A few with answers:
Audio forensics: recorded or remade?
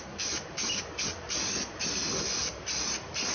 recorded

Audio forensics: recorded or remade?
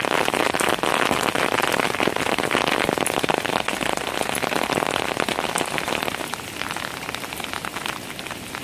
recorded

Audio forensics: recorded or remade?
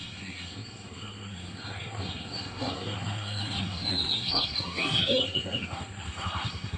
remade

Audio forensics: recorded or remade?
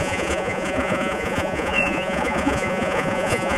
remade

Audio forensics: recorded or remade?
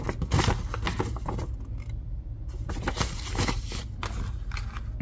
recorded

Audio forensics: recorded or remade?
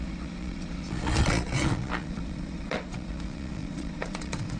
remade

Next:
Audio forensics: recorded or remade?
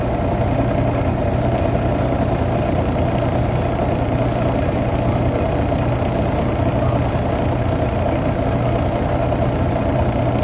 recorded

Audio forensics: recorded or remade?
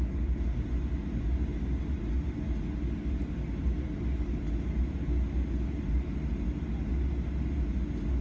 recorded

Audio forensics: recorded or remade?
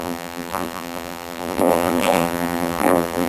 remade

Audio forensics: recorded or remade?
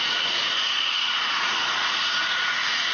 remade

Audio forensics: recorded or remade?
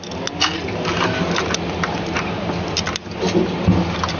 recorded